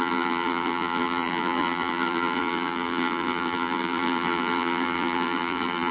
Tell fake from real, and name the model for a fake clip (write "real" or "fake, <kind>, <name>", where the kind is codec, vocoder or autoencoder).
fake, vocoder, BigVGAN v2